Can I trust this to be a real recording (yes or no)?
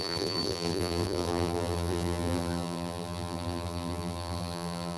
no